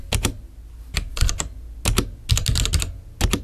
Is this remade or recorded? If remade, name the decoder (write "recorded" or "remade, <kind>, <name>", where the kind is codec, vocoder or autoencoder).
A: recorded